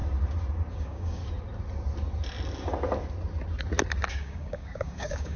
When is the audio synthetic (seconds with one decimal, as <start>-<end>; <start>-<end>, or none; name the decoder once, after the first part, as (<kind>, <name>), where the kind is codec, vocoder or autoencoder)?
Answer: 0.7-1.2 (codec, DAC); 4.1-5.4